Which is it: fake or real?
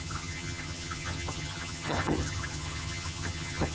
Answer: fake